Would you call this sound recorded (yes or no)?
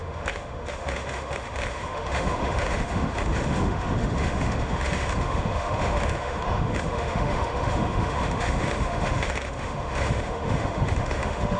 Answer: no